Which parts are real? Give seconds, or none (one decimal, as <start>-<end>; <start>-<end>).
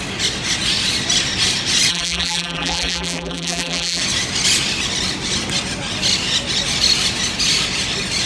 0.0-1.9; 4.0-8.3